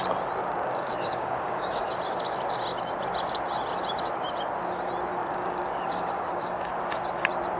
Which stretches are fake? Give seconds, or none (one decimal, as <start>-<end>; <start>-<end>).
0.4-1.9; 5.2-6.7